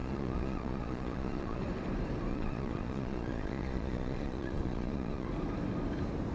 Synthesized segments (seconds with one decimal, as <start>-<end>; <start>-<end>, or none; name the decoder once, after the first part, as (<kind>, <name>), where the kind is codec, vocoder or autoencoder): 0.0-1.6 (vocoder, Vocos); 2.3-5.3